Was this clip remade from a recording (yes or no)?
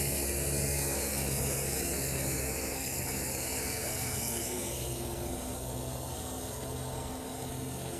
yes